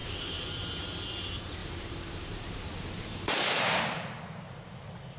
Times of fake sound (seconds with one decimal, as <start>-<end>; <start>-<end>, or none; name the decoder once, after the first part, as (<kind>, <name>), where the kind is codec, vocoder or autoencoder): 0.0-0.5 (vocoder, BigVGAN v2); 1.6-4.4